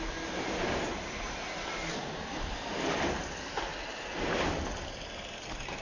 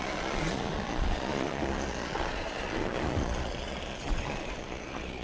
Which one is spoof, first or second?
second